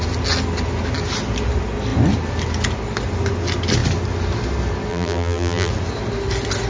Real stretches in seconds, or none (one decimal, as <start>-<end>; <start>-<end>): 0.0-4.9; 5.7-6.7